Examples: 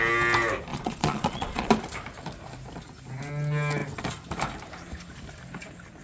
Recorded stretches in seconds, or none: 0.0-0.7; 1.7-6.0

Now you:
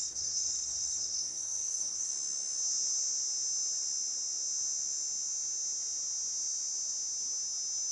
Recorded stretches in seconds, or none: 2.1-7.9

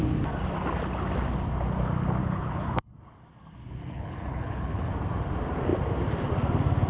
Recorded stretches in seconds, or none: 0.0-2.2; 2.9-3.8; 4.9-6.9

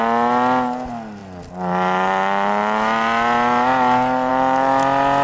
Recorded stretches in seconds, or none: 0.0-5.2

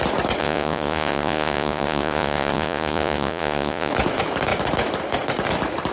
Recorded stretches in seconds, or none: 0.0-0.4; 3.9-5.9

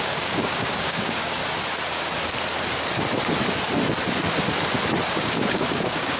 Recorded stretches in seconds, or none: 1.4-5.1